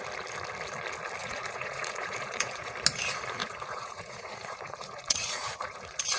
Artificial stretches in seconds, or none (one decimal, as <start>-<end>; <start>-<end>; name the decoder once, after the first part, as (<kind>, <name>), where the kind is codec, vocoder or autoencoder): 1.2-2.7 (vocoder, Vocos); 3.4-6.2